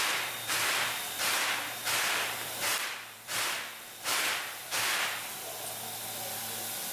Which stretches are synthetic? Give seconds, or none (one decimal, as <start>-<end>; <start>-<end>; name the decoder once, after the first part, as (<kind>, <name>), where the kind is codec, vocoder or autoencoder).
0.0-6.9 (vocoder, BigVGAN v2)